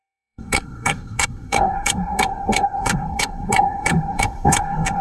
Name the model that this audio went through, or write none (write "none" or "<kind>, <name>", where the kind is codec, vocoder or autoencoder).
codec, SNAC